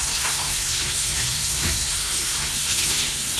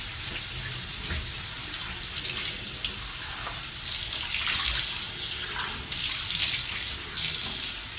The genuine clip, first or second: second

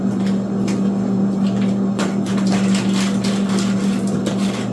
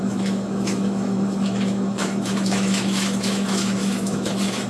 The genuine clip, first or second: first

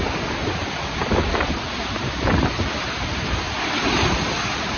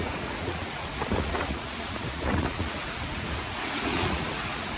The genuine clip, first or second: first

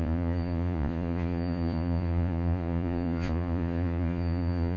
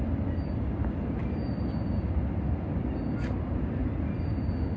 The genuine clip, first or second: second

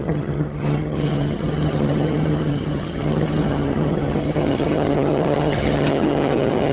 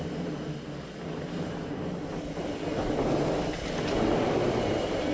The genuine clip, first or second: second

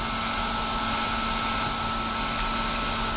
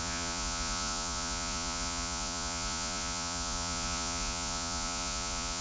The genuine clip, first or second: first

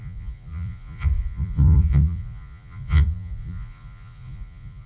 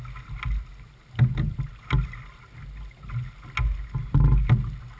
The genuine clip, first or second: second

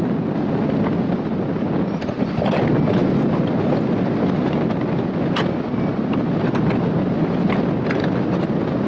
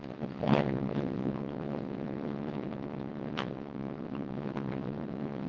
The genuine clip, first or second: first